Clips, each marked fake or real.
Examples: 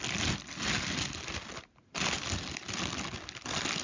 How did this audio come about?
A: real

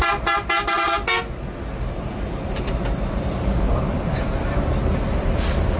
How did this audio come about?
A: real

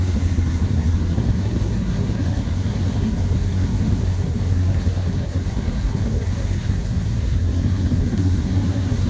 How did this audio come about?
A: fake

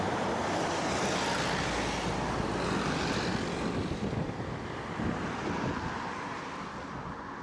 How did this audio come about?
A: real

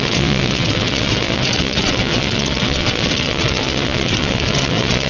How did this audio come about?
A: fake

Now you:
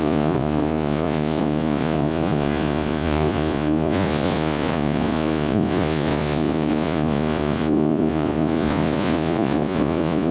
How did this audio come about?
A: fake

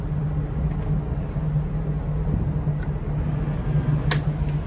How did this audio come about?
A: real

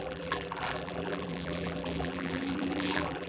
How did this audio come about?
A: fake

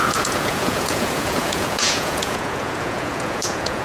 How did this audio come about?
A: fake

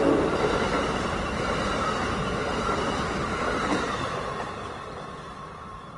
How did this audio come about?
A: real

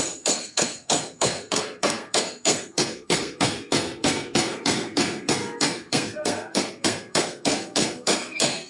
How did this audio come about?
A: fake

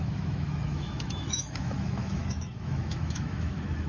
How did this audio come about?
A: fake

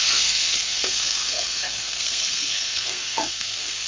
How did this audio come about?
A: fake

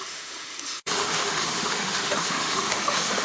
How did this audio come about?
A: fake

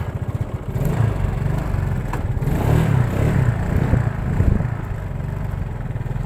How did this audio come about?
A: real